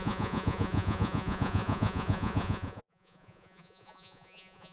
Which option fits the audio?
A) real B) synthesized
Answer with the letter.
B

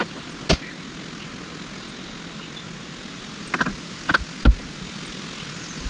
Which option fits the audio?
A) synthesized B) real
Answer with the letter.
B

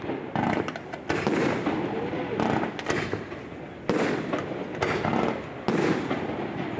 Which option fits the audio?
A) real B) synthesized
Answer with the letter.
A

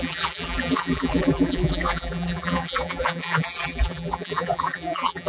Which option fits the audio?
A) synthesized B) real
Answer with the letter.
A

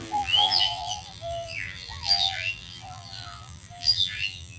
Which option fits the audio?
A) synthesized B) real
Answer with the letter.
A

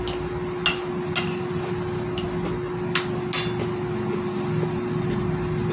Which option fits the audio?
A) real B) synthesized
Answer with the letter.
A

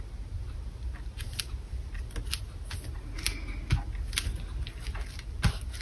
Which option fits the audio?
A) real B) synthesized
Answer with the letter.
A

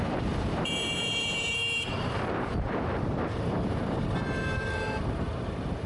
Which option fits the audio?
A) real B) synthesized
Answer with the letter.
B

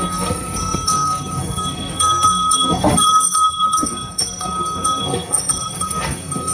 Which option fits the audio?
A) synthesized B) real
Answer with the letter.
A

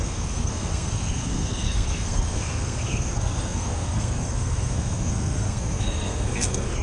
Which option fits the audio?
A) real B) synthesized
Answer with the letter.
B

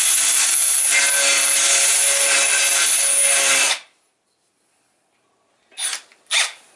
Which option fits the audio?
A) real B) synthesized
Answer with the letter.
A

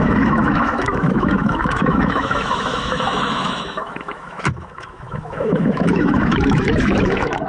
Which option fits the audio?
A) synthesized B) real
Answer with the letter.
A